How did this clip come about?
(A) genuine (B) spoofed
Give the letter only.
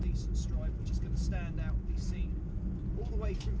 A